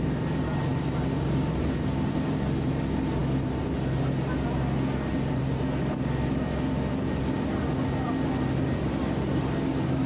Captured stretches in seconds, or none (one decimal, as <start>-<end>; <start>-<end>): 0.0-10.1